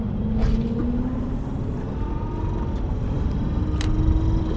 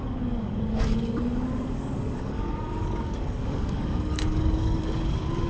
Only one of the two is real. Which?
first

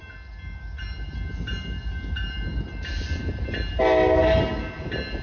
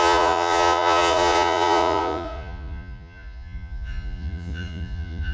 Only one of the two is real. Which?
first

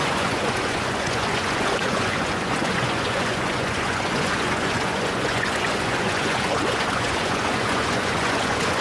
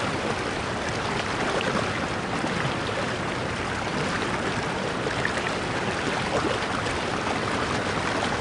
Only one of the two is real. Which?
second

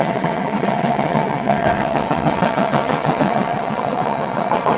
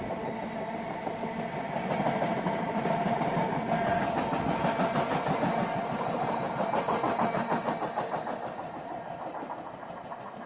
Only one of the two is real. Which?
second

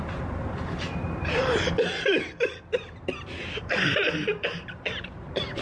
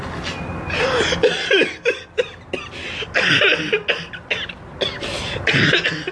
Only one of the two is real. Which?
second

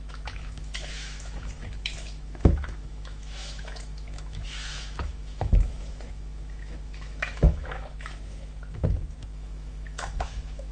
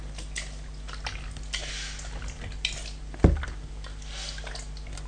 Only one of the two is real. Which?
second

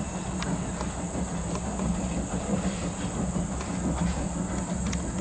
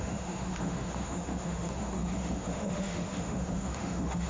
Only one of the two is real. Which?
first